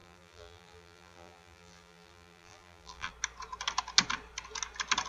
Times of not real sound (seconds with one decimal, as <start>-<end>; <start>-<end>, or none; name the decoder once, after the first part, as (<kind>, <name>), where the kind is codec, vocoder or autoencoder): 0.0-3.1 (vocoder, BigVGAN v2)